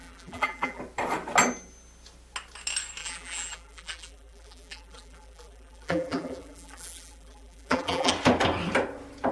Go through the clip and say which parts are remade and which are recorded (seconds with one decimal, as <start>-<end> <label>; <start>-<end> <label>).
0.0-0.8 remade; 0.8-3.0 recorded; 3.0-8.1 remade; 8.1-9.3 recorded